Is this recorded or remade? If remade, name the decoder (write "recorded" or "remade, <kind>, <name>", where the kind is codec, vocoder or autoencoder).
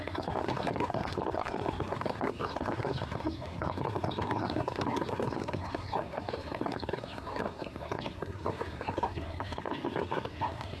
remade, codec, SNAC